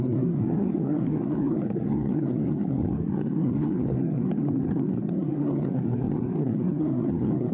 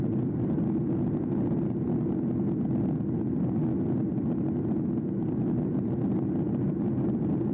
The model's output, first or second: first